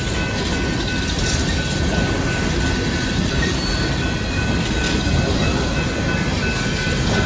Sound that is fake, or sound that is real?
real